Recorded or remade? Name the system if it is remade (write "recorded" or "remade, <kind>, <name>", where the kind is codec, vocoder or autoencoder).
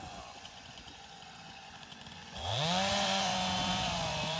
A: remade, vocoder, Vocos